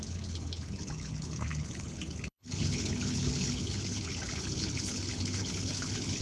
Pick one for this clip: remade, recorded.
remade